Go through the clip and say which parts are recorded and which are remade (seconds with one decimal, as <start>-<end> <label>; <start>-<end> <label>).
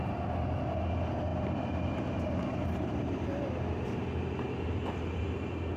0.0-5.8 recorded